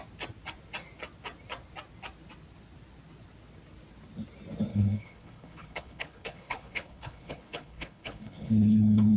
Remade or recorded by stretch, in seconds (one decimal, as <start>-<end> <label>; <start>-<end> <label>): 0.0-4.7 recorded; 4.7-9.2 remade